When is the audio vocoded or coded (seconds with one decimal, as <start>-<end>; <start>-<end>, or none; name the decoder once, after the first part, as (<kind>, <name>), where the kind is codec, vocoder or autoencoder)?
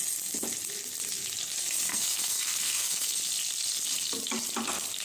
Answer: 1.9-3.2 (codec, SNAC)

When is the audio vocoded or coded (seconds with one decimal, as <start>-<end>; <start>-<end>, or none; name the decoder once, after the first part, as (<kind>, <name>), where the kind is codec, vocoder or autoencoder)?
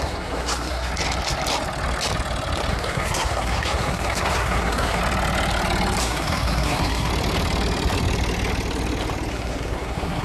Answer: 0.0-0.9 (codec, SNAC); 2.7-5.0; 6.0-7.1; 9.3-10.2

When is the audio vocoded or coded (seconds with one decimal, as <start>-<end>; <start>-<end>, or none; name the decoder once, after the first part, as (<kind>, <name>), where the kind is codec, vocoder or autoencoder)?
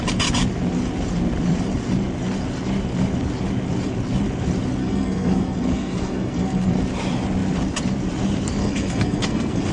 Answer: 4.8-6.7 (codec, SNAC); 8.6-9.7